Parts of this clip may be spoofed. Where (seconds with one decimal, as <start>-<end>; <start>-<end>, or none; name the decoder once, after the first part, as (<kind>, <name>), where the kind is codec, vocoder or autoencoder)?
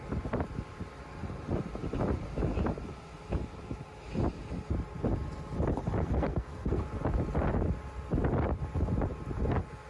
6.0-6.8 (codec, SNAC)